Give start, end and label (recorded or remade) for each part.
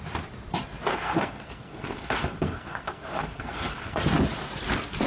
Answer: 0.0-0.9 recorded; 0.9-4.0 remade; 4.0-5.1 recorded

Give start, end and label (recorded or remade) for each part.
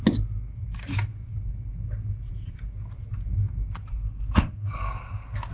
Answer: 0.0-3.8 recorded; 3.8-5.5 remade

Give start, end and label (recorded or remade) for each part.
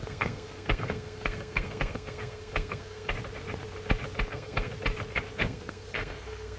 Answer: 0.0-3.1 remade; 3.1-4.3 recorded; 4.3-4.7 remade; 4.7-5.3 recorded; 5.3-6.6 remade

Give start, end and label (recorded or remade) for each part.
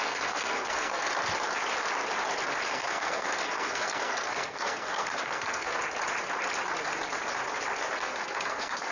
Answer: 0.0-1.1 remade; 1.1-2.7 recorded; 2.7-5.7 remade; 5.7-8.0 recorded; 8.0-8.9 remade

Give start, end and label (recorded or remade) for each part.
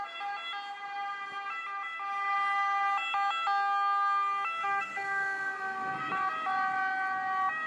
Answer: 0.0-4.6 recorded; 4.6-6.1 remade; 6.1-7.7 recorded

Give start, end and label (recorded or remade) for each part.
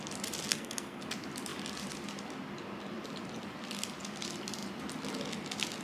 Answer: 0.0-0.5 recorded; 0.5-1.0 remade; 1.0-5.8 recorded